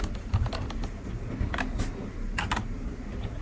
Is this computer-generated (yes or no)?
no